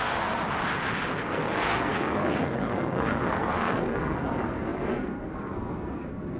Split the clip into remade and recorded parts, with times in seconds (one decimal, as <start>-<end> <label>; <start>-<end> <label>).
0.0-0.4 remade; 0.4-1.2 recorded; 1.2-6.4 remade